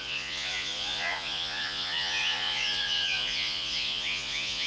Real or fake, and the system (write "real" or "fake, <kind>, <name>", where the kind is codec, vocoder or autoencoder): fake, vocoder, Vocos